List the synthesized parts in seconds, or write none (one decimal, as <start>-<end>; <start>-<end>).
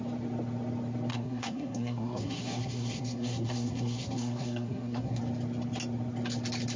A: 1.1-5.2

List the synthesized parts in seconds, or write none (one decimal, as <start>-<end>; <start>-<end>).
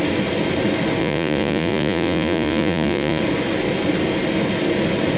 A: 1.0-3.2